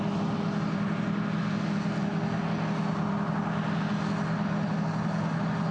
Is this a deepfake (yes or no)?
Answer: no